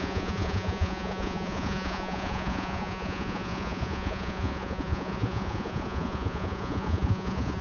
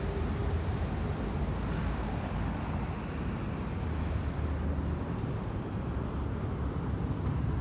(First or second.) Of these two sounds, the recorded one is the second